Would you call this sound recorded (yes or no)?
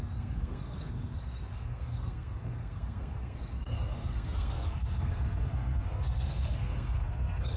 no